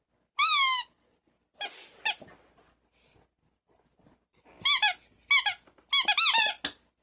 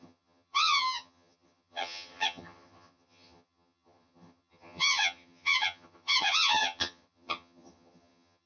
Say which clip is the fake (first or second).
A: second